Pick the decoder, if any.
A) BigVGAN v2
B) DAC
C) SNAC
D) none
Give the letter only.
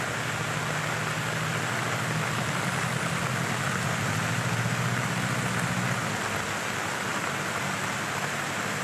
D